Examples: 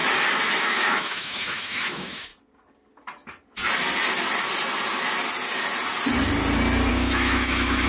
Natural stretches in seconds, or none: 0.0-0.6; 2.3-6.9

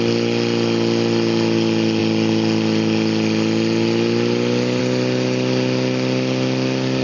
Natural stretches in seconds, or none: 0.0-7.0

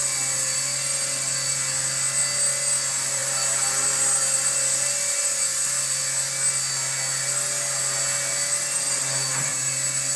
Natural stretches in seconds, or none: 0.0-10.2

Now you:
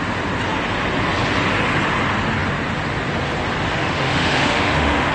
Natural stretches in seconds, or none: 0.0-3.8